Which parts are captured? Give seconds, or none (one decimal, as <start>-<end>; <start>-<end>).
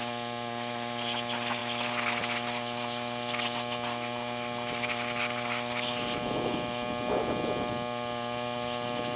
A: 0.0-9.2